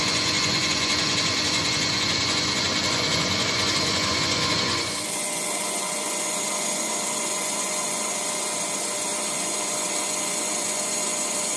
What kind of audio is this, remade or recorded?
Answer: remade